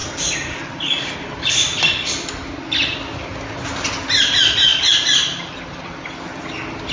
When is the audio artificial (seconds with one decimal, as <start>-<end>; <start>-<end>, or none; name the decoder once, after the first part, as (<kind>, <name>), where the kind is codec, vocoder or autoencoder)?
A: none